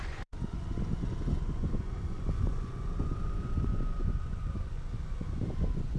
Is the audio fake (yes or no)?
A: yes